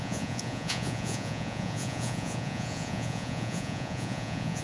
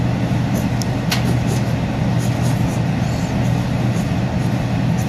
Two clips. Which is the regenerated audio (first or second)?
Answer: first